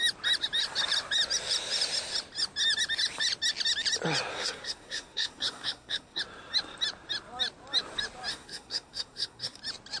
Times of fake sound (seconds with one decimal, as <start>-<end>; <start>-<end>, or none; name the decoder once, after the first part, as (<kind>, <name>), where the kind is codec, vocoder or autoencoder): 4.3-6.2 (codec, SNAC); 8.3-9.6